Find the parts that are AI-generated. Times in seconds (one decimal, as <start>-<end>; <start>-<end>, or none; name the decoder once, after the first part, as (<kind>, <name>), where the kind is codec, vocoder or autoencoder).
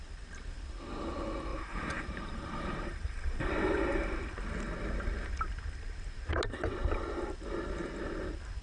1.5-4.2 (vocoder, BigVGAN v2)